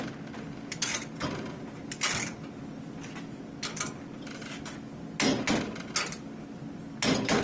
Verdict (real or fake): real